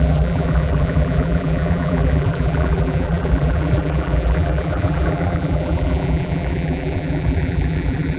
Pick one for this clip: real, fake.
fake